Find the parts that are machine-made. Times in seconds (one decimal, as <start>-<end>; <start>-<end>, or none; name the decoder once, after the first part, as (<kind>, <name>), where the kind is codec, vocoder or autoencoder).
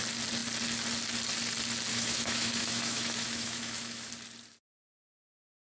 1.9-4.1 (autoencoder, DAC-VAE)